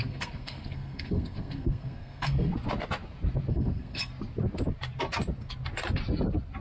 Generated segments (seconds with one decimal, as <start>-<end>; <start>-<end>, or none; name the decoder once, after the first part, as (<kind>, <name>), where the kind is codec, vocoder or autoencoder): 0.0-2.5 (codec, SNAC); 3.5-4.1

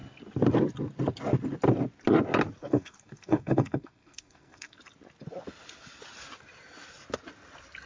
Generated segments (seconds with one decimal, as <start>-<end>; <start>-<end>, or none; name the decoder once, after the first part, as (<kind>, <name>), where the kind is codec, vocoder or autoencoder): 2.6-4.8 (codec, SNAC)

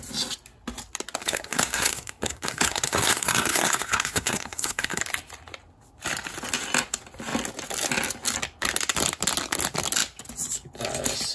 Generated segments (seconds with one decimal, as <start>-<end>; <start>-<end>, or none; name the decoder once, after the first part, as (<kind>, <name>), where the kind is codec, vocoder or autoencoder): 1.2-5.0 (codec, SNAC)

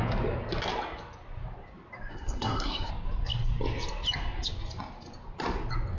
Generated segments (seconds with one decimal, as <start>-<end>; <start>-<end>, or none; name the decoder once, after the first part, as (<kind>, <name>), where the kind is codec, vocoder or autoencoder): 2.1-2.9 (codec, SNAC)

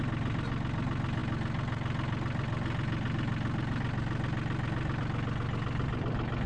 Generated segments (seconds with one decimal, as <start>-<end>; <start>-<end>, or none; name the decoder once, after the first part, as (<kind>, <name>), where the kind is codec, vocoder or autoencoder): none